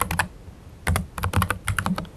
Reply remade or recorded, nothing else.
recorded